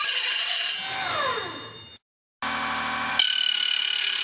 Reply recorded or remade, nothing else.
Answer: recorded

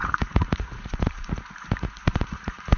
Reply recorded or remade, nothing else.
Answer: remade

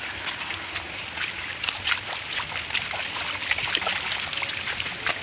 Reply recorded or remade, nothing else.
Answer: recorded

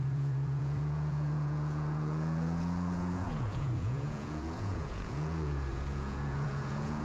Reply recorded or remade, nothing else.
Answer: remade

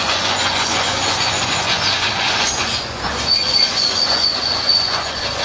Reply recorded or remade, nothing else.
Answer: remade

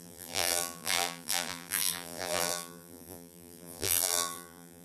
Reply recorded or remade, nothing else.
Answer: remade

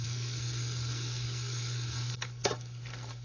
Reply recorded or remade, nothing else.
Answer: remade